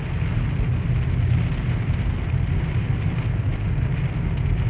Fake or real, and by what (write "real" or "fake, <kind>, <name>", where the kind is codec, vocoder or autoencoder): real